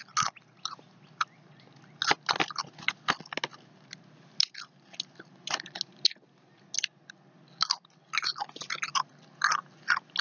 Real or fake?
real